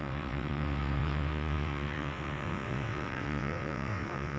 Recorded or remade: remade